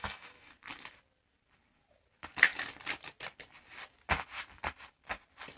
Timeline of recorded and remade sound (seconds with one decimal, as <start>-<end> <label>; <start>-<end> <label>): 0.0-0.5 remade; 0.5-5.6 recorded